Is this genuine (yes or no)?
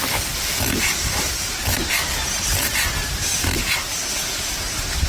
yes